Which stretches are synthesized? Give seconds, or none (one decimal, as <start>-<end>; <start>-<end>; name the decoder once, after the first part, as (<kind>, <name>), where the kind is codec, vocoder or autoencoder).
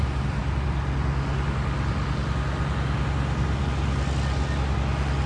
none